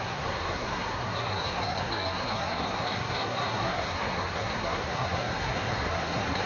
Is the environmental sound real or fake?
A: fake